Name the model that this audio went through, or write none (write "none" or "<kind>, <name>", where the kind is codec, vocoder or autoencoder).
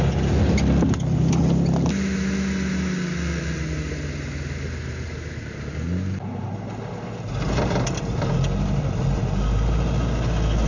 none